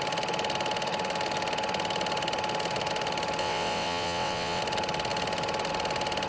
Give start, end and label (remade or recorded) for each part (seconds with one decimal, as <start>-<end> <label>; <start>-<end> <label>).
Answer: 0.0-3.4 recorded; 3.4-4.6 remade; 4.6-6.3 recorded